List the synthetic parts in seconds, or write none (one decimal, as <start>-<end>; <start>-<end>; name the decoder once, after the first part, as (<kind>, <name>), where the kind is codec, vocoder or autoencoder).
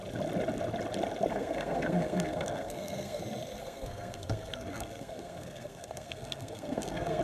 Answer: 1.3-3.2 (codec, SNAC); 3.6-7.2